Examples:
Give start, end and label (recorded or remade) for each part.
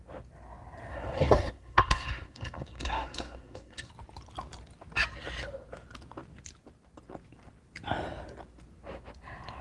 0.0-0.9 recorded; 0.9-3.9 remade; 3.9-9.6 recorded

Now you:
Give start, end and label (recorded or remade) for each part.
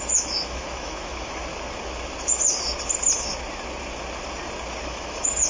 0.0-1.5 remade; 1.5-4.8 recorded; 4.8-5.5 remade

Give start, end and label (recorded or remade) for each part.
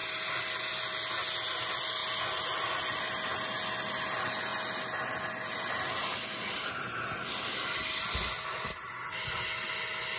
0.0-10.2 recorded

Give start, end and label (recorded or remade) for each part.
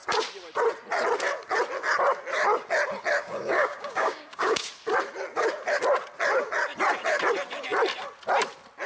0.0-3.2 recorded; 3.2-4.7 remade; 4.7-8.9 recorded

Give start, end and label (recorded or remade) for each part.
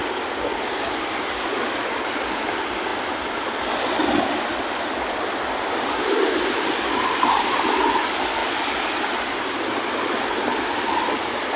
0.0-11.6 recorded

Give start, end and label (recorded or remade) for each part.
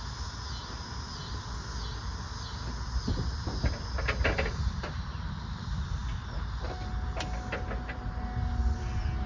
0.0-9.3 recorded